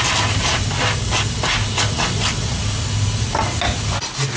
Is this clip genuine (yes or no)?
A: yes